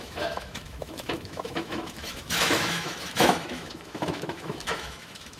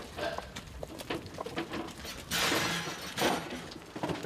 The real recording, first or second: second